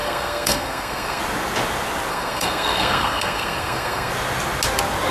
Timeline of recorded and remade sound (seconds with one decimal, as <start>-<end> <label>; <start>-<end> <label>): 0.0-1.2 remade; 1.2-2.1 recorded; 2.1-4.1 remade; 4.1-5.1 recorded